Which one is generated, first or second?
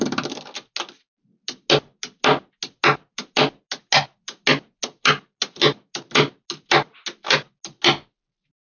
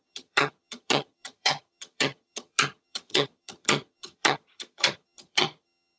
second